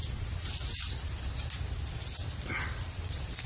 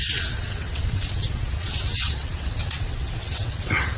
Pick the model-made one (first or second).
second